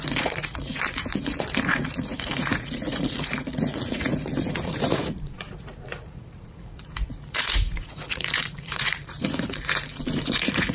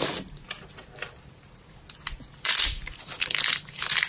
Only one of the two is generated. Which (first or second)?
first